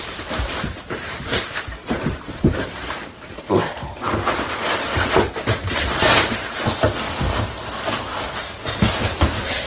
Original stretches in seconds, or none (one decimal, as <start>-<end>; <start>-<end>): 3.8-8.9